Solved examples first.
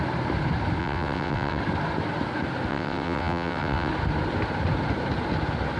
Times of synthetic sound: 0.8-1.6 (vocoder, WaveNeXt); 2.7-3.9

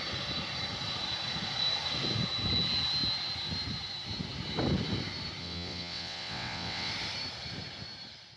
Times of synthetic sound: 5.4-6.9 (vocoder, WaveNeXt)

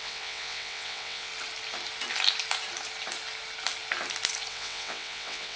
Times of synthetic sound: 0.0-1.3 (vocoder, WaveNeXt); 4.5-5.6

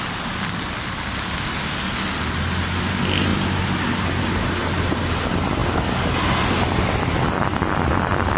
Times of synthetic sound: none